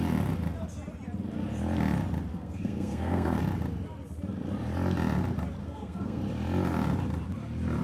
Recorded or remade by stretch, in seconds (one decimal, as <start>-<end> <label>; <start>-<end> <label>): 0.0-2.3 recorded; 2.3-3.4 remade; 3.4-5.6 recorded; 5.6-6.2 remade; 6.2-7.8 recorded